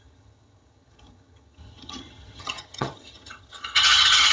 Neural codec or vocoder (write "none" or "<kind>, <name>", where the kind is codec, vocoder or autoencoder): vocoder, HiFi-GAN